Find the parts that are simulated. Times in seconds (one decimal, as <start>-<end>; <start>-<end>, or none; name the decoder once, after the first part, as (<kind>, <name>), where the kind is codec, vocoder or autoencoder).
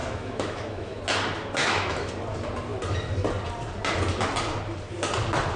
0.0-1.0 (autoencoder, DAC-VAE); 1.6-2.1